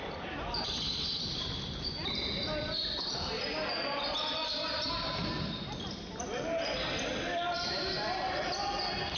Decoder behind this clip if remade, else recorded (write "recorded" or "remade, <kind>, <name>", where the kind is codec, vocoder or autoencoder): recorded